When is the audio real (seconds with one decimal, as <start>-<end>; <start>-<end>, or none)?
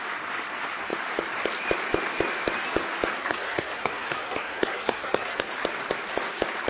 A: 0.0-3.2; 5.5-6.7